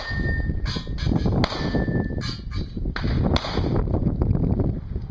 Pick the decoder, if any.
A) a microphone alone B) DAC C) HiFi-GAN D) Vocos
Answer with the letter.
A